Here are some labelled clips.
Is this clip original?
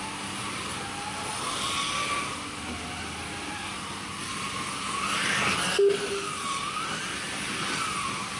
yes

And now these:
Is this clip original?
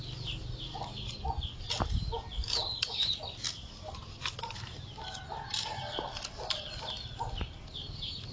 yes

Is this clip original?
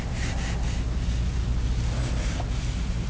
yes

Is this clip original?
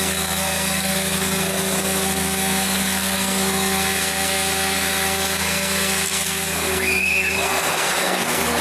no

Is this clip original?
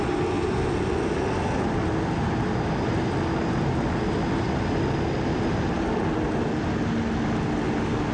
yes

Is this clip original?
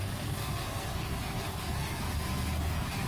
no